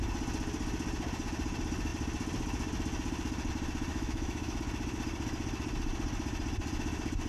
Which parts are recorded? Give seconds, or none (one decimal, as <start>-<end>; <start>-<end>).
0.0-3.9; 4.6-7.3